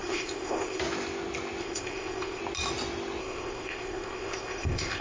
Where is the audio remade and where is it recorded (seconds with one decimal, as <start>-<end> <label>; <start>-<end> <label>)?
0.0-0.8 remade; 0.8-1.6 recorded; 1.6-2.4 remade; 2.4-3.2 recorded; 3.2-5.0 remade